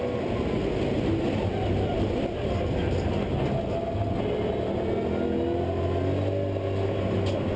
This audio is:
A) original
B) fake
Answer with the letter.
A